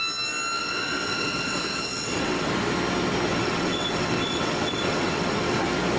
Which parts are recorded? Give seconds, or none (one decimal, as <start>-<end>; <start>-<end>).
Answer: 0.0-0.6; 2.5-3.3; 5.6-6.0